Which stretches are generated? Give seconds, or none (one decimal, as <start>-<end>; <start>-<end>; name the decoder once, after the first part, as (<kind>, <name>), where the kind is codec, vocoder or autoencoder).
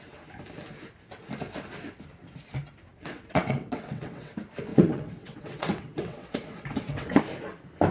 2.9-4.3 (vocoder, WaveNeXt); 4.7-7.2